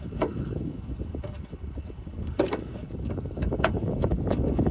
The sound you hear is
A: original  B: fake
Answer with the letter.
B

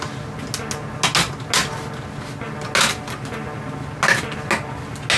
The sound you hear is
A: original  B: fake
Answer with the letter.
A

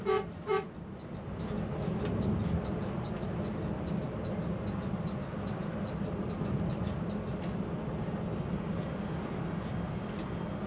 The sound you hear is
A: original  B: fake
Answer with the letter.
A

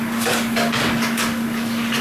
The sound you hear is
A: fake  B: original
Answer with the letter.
A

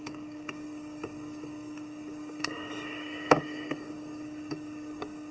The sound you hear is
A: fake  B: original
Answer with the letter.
A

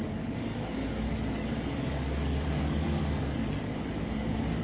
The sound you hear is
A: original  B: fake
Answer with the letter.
B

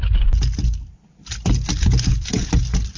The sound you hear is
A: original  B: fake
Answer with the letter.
A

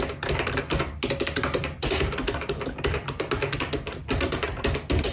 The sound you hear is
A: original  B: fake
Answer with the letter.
A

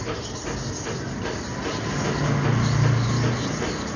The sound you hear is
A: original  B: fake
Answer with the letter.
A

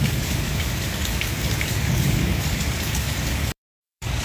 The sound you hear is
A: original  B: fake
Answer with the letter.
B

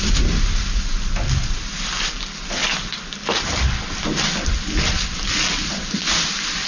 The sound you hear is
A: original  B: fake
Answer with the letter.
A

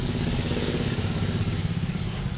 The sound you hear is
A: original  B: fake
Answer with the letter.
B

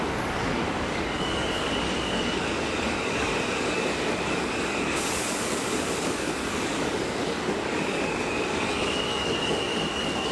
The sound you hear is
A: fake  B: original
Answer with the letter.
A